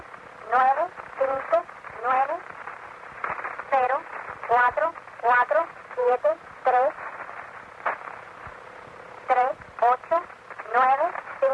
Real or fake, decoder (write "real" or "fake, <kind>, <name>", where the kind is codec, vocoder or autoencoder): real